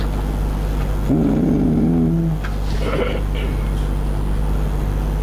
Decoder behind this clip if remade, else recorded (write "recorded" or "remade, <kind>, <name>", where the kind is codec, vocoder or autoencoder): recorded